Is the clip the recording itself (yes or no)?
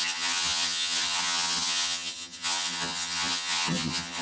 no